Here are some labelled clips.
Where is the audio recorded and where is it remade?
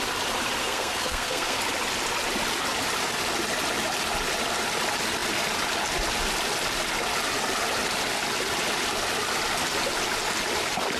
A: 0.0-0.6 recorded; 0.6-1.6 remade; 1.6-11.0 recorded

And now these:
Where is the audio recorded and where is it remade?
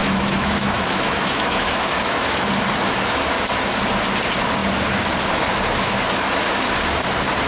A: 0.0-2.5 remade; 2.5-7.5 recorded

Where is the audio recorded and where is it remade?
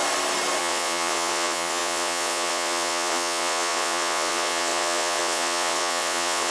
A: 0.0-0.6 recorded; 0.6-6.5 remade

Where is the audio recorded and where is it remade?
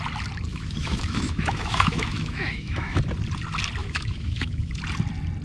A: 0.0-0.5 recorded; 0.5-3.0 remade; 3.0-3.8 recorded; 3.8-4.7 remade; 4.7-5.4 recorded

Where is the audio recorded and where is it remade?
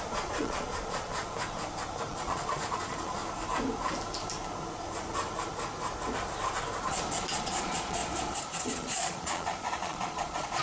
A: 0.0-1.2 remade; 1.2-2.1 recorded; 2.1-3.2 remade; 3.2-7.3 recorded; 7.3-8.0 remade; 8.0-8.6 recorded; 8.6-10.6 remade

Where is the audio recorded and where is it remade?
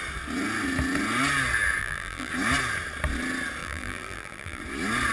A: 0.0-1.8 recorded; 1.8-2.3 remade; 2.3-3.6 recorded; 3.6-4.6 remade; 4.6-5.1 recorded